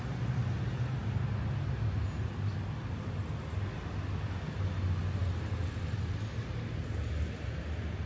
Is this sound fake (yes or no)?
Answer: no